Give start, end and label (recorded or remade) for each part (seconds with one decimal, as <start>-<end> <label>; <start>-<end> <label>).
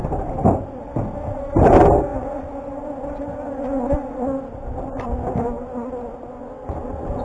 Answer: 0.0-0.8 remade; 0.8-7.2 recorded